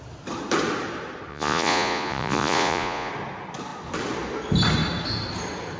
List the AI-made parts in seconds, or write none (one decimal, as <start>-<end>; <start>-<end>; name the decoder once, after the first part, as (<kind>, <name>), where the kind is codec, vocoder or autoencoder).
1.3-3.1 (vocoder, Vocos)